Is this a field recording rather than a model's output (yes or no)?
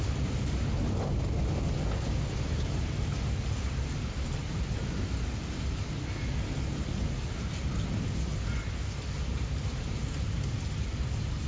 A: yes